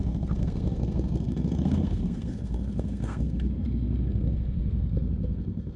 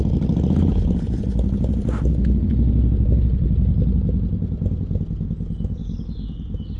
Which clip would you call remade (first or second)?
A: first